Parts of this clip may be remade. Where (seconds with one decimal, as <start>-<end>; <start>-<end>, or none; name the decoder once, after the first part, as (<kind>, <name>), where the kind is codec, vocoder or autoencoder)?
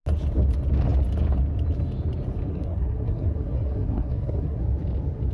2.5-4.6 (codec, SNAC)